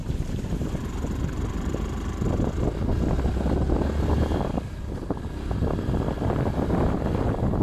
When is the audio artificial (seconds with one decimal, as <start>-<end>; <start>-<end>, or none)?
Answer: none